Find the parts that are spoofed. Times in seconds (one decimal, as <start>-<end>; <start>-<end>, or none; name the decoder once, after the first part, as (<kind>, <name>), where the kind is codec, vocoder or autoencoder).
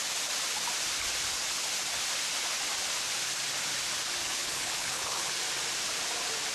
4.2-5.3 (codec, HILCodec)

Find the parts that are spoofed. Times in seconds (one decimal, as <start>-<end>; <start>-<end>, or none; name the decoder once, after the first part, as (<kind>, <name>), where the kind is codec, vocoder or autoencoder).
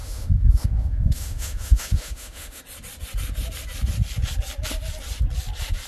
0.0-2.6 (autoencoder, DAC-VAE)